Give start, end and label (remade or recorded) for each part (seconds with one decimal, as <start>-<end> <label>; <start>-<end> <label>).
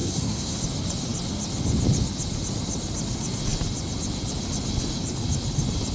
0.0-0.6 remade; 0.6-5.9 recorded